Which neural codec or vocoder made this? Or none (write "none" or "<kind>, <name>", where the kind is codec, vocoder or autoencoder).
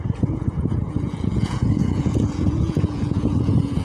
vocoder, Vocos